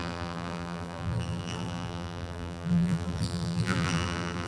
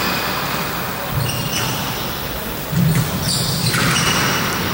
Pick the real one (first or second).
second